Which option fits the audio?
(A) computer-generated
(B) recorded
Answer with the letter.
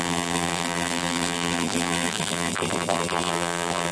A